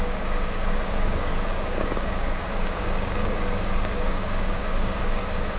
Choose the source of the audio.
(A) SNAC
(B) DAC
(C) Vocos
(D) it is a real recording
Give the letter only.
B